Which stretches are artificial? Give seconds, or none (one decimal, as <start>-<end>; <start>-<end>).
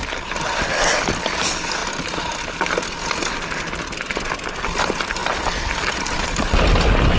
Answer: none